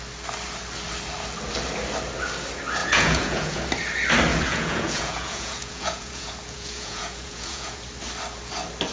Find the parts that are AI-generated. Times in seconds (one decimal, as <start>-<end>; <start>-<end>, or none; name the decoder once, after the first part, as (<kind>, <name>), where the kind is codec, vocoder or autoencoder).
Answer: 2.8-3.6 (vocoder, Vocos); 4.3-7.8